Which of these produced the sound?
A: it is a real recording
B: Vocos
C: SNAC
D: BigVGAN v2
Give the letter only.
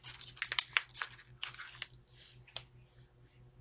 A